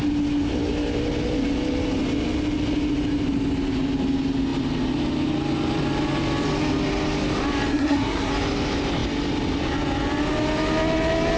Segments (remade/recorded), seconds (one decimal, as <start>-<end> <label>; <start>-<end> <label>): 0.0-7.7 recorded; 7.7-8.3 remade; 8.3-11.4 recorded